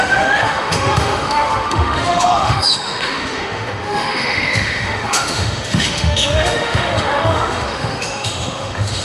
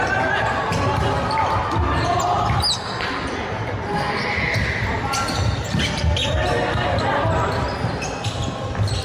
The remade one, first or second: first